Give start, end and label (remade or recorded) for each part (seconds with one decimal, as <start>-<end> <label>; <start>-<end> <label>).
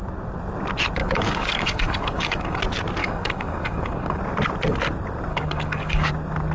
0.0-1.0 recorded; 1.0-2.6 remade; 2.6-3.0 recorded; 3.0-4.2 remade; 4.2-5.3 recorded; 5.3-6.1 remade; 6.1-6.5 recorded